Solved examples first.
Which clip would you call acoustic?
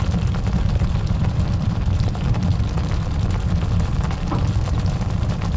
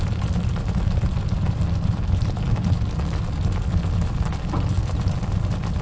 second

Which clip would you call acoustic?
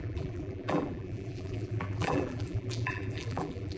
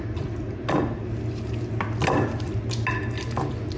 second